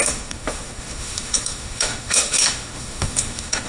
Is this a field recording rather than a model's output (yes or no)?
no